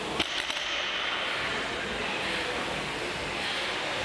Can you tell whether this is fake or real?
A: real